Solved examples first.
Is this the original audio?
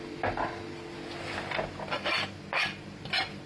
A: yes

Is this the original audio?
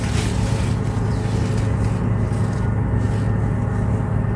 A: yes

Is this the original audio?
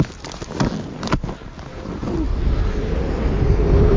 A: yes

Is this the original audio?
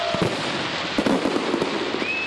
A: yes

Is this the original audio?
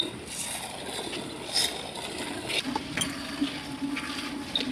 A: yes